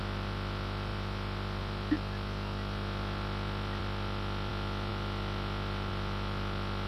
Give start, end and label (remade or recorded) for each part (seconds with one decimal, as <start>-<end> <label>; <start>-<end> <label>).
0.0-6.9 recorded